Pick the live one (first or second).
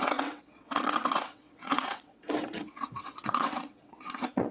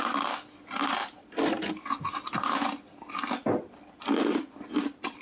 second